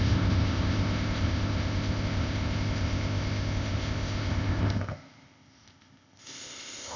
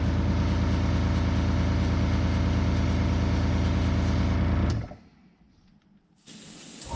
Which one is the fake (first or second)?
first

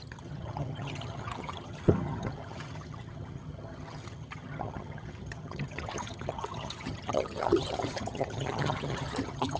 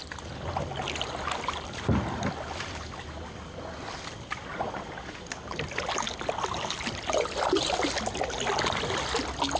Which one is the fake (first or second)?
first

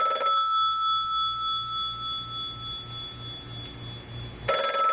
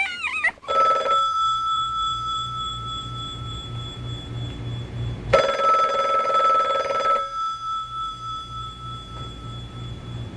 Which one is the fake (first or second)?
second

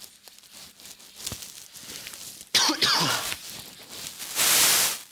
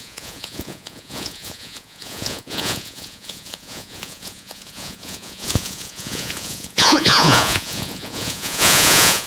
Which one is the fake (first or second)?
second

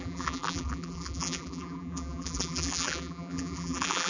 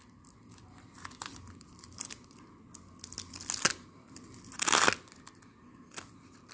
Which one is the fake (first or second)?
first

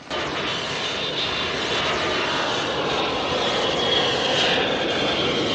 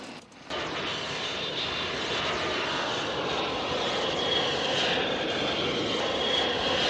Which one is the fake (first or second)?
second